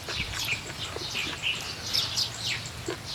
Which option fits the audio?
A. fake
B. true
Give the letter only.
B